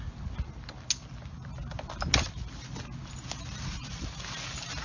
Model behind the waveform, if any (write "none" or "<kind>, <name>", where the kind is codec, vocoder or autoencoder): none